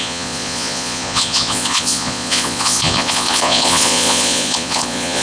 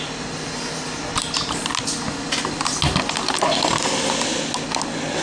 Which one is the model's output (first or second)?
first